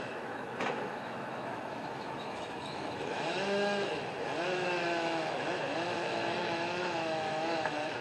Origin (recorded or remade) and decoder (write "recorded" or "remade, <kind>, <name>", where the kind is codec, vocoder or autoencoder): remade, autoencoder, DAC-VAE